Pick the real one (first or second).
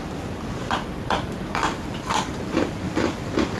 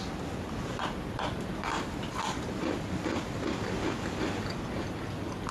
second